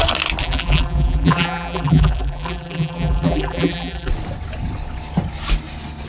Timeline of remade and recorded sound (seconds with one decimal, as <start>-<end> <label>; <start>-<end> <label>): 0.0-0.4 recorded; 0.4-4.1 remade; 4.1-6.1 recorded